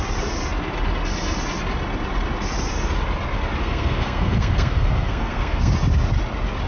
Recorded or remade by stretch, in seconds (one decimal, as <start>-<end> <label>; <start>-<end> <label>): 0.0-3.6 recorded; 3.6-5.7 remade; 5.7-6.7 recorded